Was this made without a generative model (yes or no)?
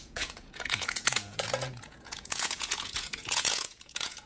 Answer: no